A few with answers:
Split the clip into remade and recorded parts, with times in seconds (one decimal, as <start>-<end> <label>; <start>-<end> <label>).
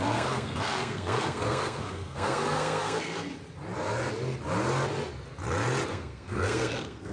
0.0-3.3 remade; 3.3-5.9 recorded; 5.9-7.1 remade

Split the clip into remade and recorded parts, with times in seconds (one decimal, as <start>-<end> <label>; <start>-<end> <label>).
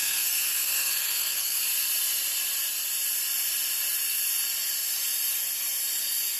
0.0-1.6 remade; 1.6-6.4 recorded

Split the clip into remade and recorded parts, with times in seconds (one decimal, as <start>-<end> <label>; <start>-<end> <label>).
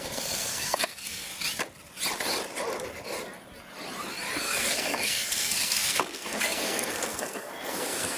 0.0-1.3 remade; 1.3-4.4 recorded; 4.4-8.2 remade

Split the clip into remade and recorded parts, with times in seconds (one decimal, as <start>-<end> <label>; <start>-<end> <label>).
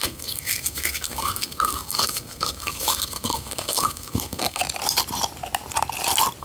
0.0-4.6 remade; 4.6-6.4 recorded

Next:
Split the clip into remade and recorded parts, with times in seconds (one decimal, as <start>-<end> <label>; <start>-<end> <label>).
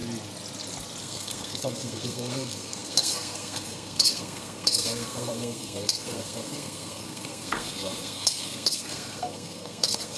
0.0-1.0 recorded; 1.0-10.2 remade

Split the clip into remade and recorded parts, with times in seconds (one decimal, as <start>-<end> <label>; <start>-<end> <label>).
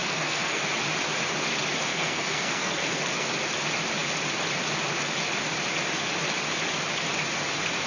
0.0-0.6 remade; 0.6-1.9 recorded; 1.9-3.3 remade; 3.3-7.9 recorded